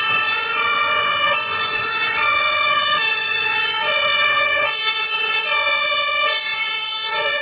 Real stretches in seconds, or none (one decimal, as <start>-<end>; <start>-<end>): none